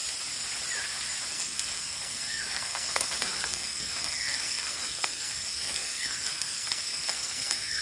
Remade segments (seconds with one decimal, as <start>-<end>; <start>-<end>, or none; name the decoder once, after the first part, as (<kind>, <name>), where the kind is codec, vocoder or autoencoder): 1.3-7.8 (codec, SNAC)